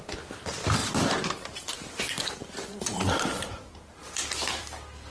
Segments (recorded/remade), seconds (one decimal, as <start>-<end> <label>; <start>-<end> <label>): 0.0-0.8 recorded; 0.8-2.0 remade; 2.0-2.4 recorded; 2.4-3.1 remade; 3.1-5.1 recorded